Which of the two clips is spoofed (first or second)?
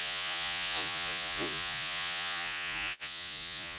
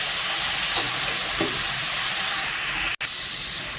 first